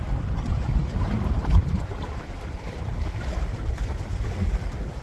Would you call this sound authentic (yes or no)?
yes